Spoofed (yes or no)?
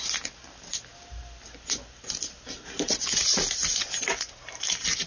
no